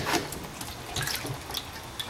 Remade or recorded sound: recorded